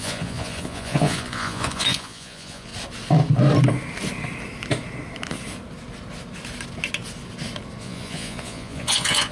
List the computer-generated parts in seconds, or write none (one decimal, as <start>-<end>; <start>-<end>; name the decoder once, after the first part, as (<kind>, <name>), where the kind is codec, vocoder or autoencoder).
0.0-2.7 (vocoder, Vocos); 7.8-9.3